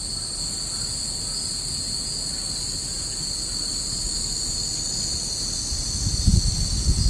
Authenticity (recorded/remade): recorded